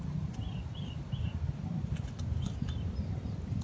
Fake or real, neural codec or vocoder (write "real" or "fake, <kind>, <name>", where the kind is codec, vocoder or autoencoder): real